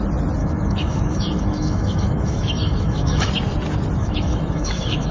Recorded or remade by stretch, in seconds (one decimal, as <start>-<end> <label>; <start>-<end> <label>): 0.0-0.4 recorded; 0.4-3.3 remade; 3.3-4.0 recorded; 4.0-5.1 remade